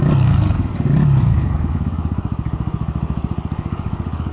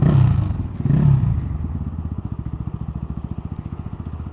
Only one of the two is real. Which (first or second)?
second